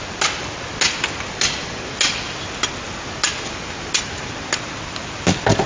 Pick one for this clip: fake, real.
real